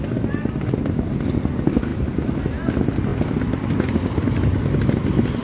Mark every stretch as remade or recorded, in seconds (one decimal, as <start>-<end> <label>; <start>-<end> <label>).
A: 0.0-5.4 recorded